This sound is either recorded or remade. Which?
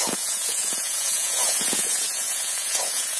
remade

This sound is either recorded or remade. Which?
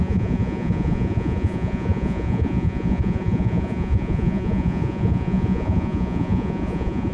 remade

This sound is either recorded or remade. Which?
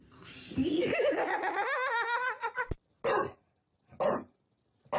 recorded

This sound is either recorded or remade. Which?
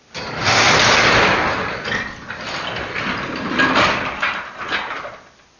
recorded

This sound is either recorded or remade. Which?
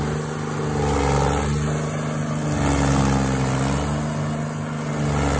recorded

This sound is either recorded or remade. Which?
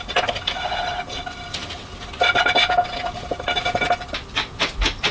recorded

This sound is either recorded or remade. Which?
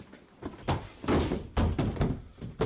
recorded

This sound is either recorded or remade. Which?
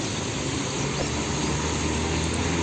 recorded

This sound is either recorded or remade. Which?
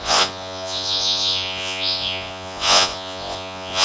remade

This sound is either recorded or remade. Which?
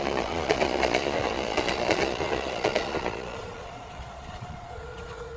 remade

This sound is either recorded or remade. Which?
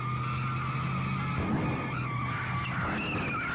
recorded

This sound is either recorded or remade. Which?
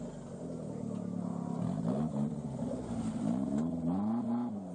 recorded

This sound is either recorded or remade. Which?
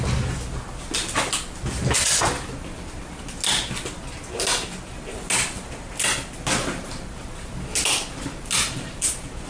recorded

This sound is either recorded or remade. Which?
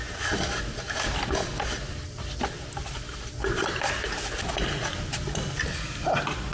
recorded